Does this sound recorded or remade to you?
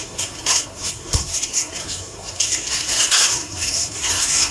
remade